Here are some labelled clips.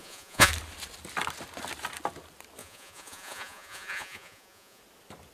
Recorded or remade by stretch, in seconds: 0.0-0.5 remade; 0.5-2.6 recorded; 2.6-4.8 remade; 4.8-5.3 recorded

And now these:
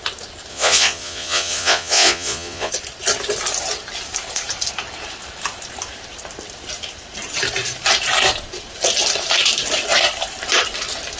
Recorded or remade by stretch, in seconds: 0.0-0.5 recorded; 0.5-2.7 remade; 2.7-11.2 recorded